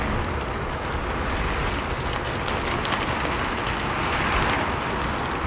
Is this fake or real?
real